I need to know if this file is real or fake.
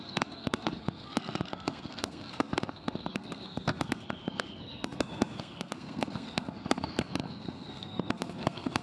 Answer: fake